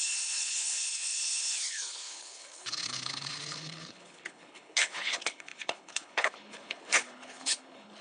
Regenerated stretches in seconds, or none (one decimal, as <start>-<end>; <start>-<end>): 0.0-8.0